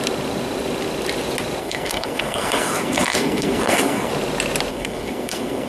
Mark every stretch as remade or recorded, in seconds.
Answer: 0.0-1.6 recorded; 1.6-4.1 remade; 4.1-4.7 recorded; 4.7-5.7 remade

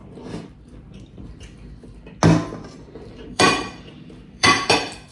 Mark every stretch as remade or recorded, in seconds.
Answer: 0.0-3.1 recorded; 3.1-5.1 remade

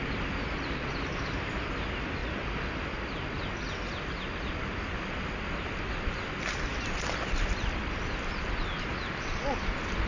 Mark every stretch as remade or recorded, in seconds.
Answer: 0.0-10.1 recorded

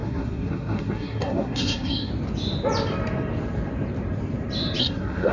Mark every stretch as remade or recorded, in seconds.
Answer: 0.0-2.1 remade; 2.1-4.8 recorded; 4.8-5.3 remade

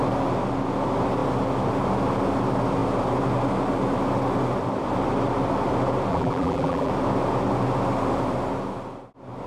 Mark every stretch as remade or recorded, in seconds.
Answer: 0.0-6.1 recorded; 6.1-6.9 remade; 6.9-9.5 recorded

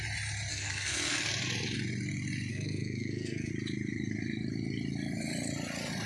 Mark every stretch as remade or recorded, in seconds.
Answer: 0.0-0.5 recorded; 0.5-1.1 remade; 1.1-2.5 recorded; 2.5-3.5 remade; 3.5-6.1 recorded

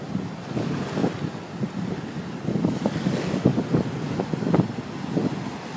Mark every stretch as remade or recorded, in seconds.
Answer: 0.0-5.8 recorded

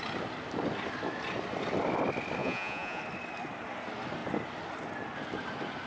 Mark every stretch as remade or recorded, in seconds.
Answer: 0.0-2.4 recorded; 2.4-3.0 remade; 3.0-5.9 recorded